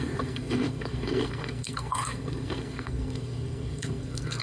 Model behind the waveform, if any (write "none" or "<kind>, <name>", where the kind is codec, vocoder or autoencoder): codec, SNAC